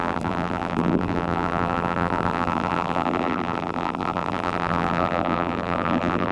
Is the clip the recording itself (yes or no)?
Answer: no